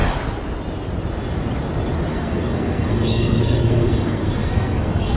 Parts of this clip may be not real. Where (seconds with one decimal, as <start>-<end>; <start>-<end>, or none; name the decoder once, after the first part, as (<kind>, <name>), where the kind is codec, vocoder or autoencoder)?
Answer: 2.1-5.2 (codec, SNAC)